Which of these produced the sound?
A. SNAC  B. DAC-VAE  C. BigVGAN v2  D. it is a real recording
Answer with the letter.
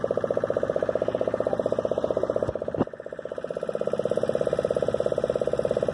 D